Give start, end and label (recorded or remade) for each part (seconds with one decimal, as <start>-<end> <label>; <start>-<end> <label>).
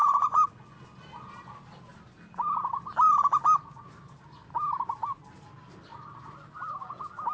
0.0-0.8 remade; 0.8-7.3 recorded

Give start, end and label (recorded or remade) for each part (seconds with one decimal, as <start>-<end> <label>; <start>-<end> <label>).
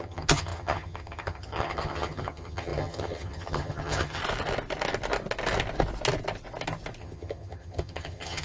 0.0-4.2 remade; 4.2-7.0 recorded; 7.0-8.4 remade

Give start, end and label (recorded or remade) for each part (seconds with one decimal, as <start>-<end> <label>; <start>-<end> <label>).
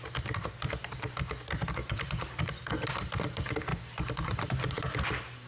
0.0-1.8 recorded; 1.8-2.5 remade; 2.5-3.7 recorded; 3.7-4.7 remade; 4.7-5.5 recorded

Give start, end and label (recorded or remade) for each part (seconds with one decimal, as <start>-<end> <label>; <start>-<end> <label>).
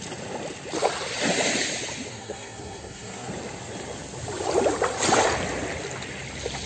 0.0-2.1 recorded; 2.1-3.3 remade; 3.3-6.7 recorded